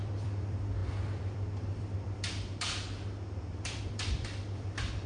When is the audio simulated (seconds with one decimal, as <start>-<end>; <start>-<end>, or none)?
0.0-5.1